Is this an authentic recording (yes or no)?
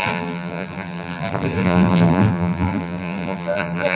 no